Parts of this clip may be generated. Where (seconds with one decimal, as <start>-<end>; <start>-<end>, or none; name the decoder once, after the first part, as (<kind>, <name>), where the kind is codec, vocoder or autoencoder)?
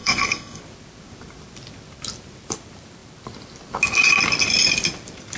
0.0-0.6 (codec, SNAC)